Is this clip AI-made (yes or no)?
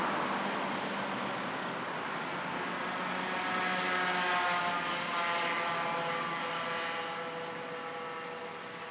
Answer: no